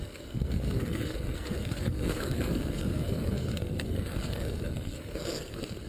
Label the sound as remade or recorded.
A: remade